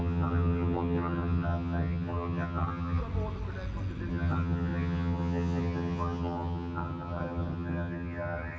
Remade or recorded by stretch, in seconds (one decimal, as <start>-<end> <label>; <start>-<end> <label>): 0.0-3.0 remade; 3.0-4.1 recorded; 4.1-8.6 remade